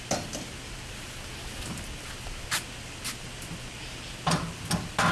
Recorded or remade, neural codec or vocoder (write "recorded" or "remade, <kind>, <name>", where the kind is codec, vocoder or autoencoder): recorded